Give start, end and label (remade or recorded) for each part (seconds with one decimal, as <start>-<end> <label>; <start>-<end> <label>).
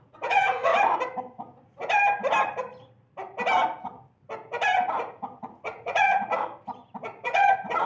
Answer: 0.0-0.7 remade; 0.7-5.4 recorded; 5.4-6.3 remade; 6.3-7.0 recorded; 7.0-7.9 remade